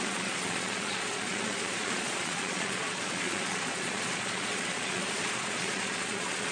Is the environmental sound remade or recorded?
remade